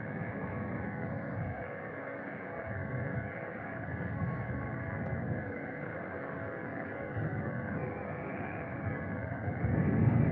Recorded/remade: remade